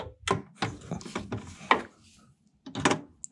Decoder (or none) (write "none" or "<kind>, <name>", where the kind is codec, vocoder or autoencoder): none